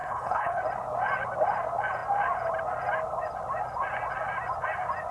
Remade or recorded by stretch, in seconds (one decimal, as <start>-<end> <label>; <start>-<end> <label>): 0.0-0.6 remade; 0.6-5.1 recorded